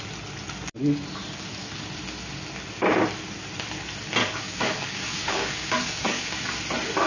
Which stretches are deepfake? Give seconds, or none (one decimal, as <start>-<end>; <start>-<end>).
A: 4.2-6.4